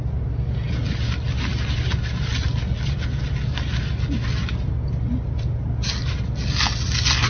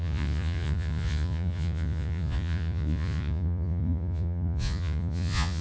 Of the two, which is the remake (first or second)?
second